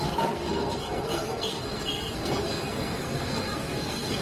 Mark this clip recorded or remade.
remade